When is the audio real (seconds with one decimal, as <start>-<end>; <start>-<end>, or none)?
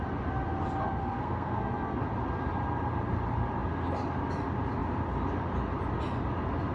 0.0-1.0; 2.0-6.7